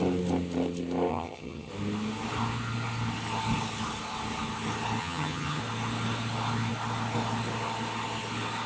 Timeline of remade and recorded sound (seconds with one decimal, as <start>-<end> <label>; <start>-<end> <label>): 0.0-1.1 recorded; 1.1-1.7 remade; 1.7-5.0 recorded; 5.0-5.6 remade; 5.6-8.7 recorded